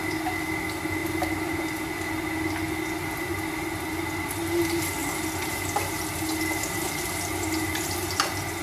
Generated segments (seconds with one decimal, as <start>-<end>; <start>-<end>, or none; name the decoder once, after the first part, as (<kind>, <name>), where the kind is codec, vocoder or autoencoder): 1.0-1.6 (vocoder, BigVGAN v2)